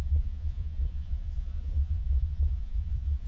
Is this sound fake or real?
fake